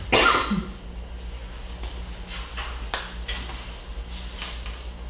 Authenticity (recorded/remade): recorded